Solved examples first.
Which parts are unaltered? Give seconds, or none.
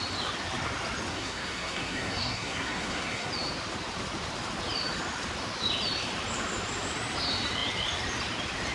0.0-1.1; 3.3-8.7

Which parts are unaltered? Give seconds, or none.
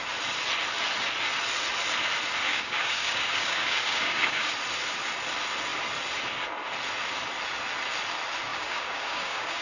0.0-2.4; 4.5-8.5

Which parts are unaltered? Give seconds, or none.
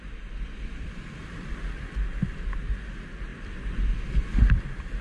0.0-5.0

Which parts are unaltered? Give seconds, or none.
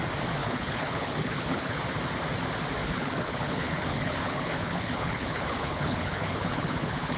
0.0-0.4; 1.8-2.8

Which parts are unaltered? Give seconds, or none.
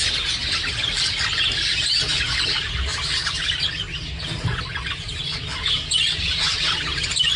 0.0-7.4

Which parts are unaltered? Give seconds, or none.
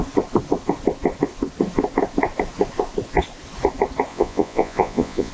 0.0-4.1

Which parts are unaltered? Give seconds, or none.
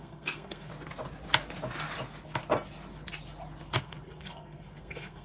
0.7-3.8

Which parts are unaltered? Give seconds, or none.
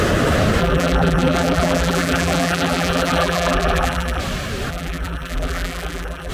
0.0-0.6; 4.2-4.7